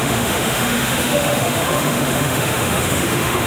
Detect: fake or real fake